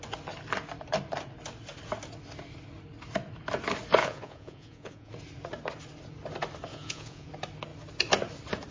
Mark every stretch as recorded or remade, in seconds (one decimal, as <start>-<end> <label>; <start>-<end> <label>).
0.0-4.0 recorded; 4.0-5.1 remade; 5.1-6.7 recorded; 6.7-7.3 remade; 7.3-8.7 recorded